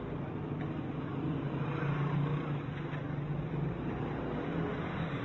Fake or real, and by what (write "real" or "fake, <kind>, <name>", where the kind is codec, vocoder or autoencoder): real